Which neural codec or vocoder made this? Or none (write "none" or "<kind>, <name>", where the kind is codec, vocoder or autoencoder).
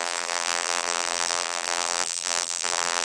vocoder, BigVGAN v2